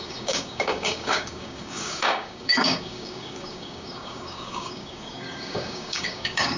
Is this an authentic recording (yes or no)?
no